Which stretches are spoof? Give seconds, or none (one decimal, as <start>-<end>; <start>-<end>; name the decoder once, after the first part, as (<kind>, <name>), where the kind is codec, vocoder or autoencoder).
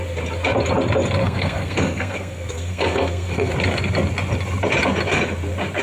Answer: 1.2-3.5 (codec, SNAC)